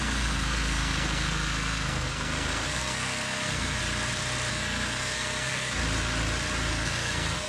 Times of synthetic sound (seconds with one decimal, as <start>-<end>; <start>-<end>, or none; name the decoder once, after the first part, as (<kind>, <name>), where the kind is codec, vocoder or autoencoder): 0.0-3.8 (codec, SNAC); 4.5-5.8; 6.7-7.5